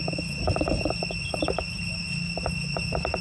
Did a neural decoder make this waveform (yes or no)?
no